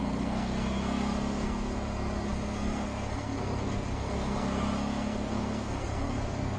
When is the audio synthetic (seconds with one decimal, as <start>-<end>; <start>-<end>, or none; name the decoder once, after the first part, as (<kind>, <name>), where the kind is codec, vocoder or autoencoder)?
0.0-6.6 (codec, SNAC)